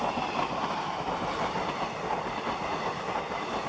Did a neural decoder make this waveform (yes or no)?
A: no